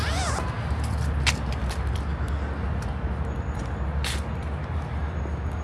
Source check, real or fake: real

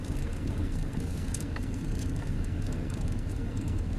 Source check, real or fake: fake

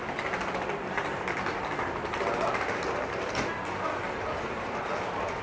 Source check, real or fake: real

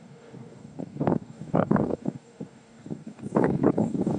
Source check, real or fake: fake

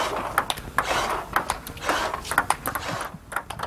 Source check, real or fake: real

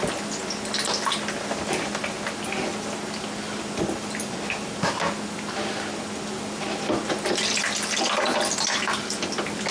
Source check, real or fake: real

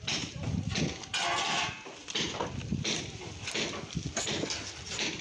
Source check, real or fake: real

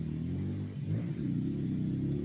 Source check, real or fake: real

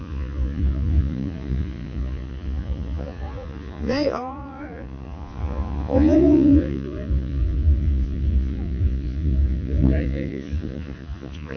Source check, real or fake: fake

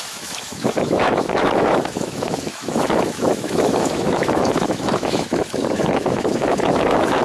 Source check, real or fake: fake